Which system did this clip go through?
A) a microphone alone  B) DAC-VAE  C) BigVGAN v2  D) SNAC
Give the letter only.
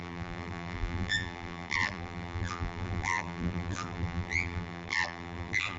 C